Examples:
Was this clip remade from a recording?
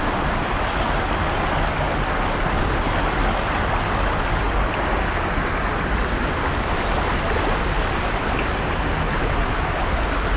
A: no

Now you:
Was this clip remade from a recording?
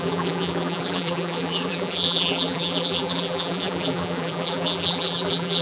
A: yes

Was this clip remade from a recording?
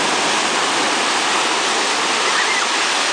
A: no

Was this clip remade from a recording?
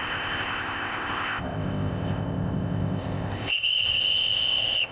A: yes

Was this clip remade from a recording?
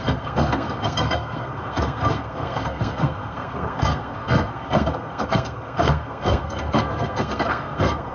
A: yes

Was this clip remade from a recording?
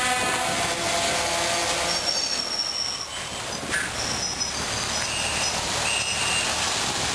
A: no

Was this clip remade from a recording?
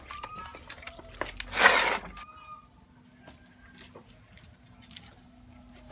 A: no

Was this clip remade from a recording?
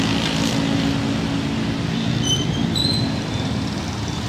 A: no